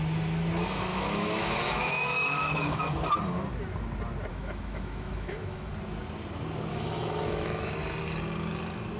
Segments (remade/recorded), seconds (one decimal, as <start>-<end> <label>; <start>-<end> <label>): 0.0-0.9 recorded; 0.9-2.8 remade; 2.8-4.3 recorded; 4.3-5.7 remade; 5.7-6.7 recorded; 6.7-7.7 remade; 7.7-9.0 recorded